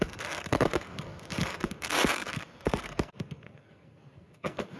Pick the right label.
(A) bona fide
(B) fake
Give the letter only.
B